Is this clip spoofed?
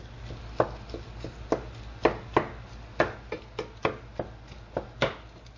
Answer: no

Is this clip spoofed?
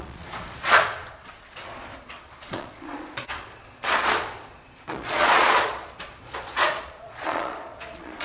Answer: yes